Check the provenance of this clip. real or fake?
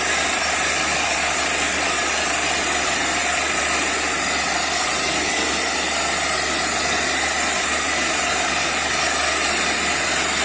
real